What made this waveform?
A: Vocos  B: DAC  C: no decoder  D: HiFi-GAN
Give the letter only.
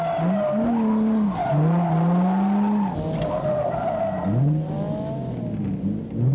C